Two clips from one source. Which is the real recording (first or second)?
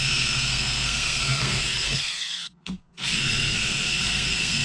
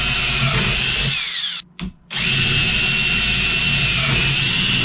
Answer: second